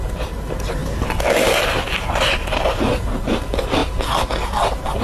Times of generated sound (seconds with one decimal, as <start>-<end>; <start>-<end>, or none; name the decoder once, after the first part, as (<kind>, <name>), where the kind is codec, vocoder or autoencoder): none